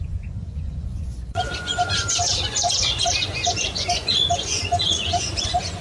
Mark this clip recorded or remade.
remade